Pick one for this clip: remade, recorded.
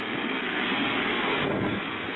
remade